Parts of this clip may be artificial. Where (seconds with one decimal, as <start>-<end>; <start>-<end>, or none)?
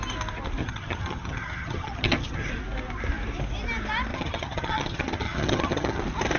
0.6-2.5; 4.1-6.0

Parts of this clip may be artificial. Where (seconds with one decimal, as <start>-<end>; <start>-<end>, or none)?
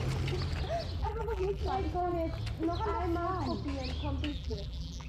1.0-1.6; 4.3-5.1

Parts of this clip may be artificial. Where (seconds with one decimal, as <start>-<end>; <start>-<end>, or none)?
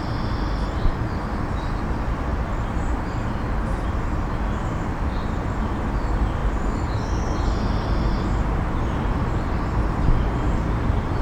none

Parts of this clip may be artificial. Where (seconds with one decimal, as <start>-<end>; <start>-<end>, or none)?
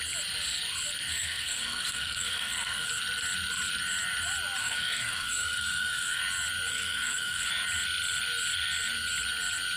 1.1-2.9; 4.6-6.2; 6.7-7.5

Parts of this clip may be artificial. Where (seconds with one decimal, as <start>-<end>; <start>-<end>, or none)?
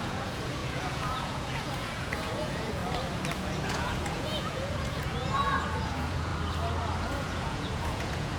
0.0-2.8; 3.7-6.3; 7.0-8.4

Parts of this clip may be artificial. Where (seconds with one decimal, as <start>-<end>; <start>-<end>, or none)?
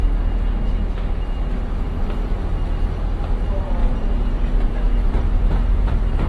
3.8-6.3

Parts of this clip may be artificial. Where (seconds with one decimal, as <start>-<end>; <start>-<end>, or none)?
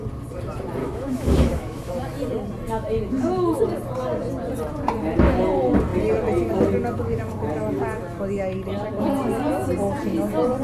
0.8-1.9; 2.8-3.6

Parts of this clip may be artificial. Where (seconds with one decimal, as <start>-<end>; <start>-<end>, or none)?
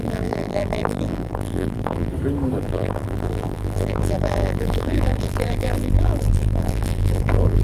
0.0-2.1; 2.6-7.6